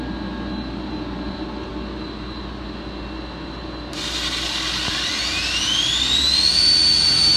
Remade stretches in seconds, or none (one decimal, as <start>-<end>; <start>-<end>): none